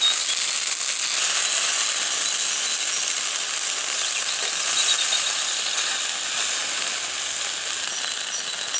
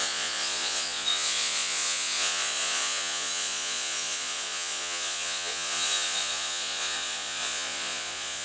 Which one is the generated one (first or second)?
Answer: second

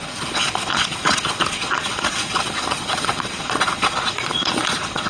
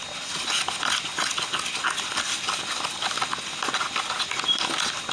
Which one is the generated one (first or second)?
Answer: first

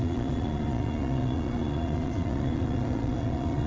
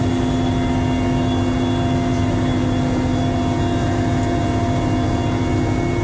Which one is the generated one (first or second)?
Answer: first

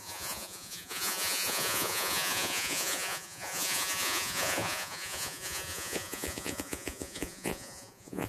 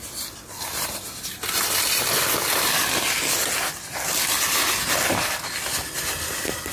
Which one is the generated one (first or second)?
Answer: first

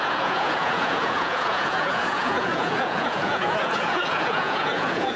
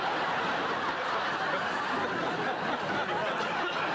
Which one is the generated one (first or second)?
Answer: first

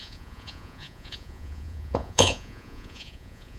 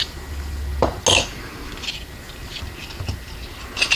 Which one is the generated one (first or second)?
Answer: first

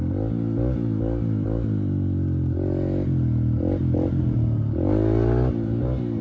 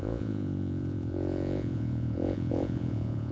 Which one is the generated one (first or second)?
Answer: second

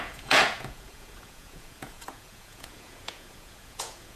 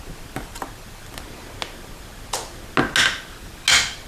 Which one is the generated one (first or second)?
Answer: first